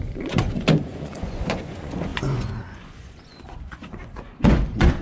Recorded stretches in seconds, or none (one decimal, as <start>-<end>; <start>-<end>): none